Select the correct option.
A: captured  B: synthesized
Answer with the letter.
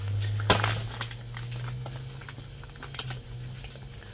A